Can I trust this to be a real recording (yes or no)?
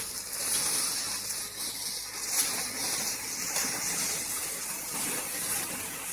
yes